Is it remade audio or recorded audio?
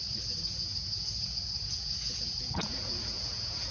remade